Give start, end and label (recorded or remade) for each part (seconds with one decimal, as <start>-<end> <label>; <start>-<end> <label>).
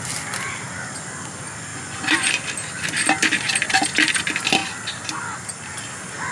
0.0-1.7 recorded; 1.7-2.3 remade; 2.3-6.3 recorded